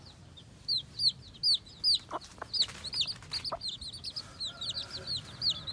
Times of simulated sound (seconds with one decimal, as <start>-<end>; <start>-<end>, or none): 0.0-1.4; 4.8-5.7